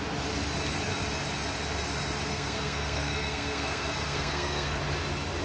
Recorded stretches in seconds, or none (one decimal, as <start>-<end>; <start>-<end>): 0.0-2.3; 4.8-5.4